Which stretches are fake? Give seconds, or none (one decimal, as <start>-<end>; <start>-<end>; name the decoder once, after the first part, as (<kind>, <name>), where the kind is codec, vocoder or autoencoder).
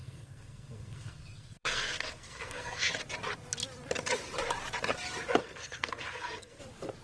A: 0.0-2.9 (codec, SNAC); 5.4-6.6